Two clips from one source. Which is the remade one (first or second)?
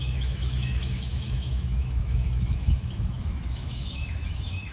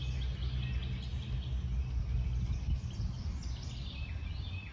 first